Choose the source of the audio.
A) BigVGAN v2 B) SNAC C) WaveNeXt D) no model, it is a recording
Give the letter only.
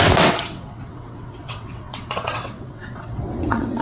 C